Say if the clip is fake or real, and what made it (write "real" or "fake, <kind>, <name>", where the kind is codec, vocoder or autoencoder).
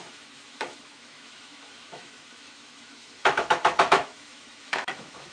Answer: fake, autoencoder, DAC-VAE